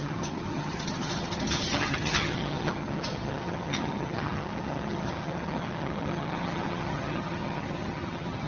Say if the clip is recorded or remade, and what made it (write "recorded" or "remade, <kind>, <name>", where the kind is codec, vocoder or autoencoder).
remade, vocoder, HiFi-GAN